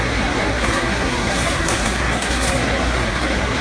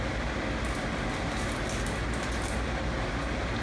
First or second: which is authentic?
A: second